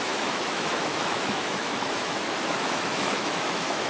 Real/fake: fake